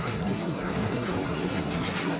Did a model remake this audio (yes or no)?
yes